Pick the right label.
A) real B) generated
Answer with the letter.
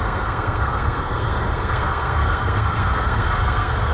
B